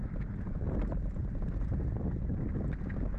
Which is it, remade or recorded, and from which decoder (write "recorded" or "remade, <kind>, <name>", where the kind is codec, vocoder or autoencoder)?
recorded